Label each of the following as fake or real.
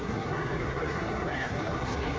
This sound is fake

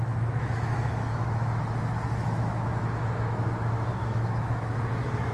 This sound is fake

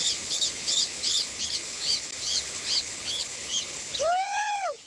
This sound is fake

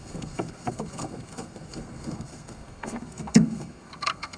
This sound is fake